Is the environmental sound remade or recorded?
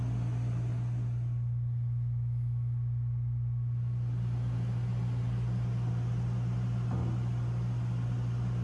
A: recorded